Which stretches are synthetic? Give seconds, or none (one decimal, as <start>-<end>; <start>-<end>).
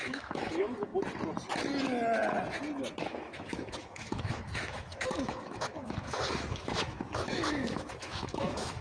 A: 0.0-0.9; 3.0-8.8